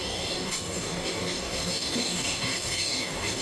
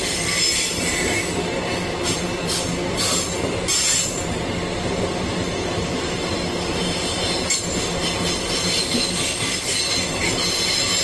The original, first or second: second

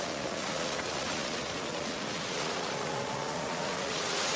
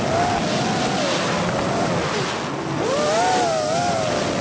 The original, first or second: second